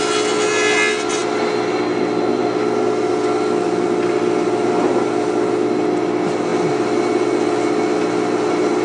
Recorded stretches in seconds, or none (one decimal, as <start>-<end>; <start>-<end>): 0.0-8.8